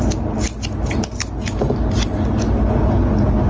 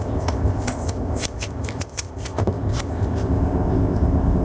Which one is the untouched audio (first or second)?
first